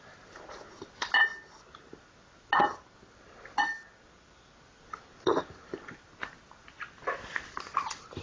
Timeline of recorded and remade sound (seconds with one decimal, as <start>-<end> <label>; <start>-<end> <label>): 0.0-3.9 recorded; 3.9-5.3 remade; 5.3-8.2 recorded